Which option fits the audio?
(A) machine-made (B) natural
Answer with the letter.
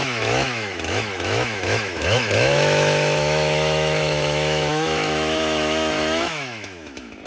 A